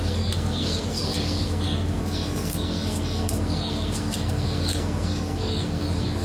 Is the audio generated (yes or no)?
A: yes